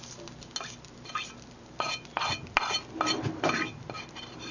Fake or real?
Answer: real